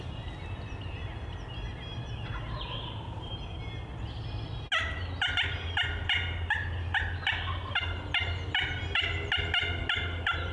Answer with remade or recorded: recorded